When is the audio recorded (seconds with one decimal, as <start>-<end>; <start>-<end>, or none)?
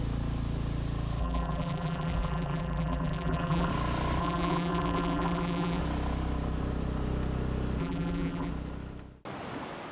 0.0-1.2; 3.7-4.2; 5.8-7.8; 8.5-9.9